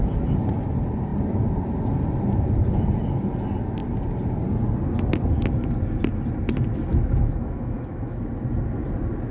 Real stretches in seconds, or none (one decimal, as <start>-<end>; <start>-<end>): 0.0-6.9; 8.2-9.3